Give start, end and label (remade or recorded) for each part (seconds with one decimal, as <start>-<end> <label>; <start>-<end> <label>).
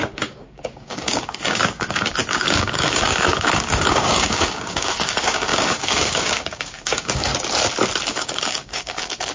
0.0-7.3 remade; 7.3-8.1 recorded; 8.1-9.3 remade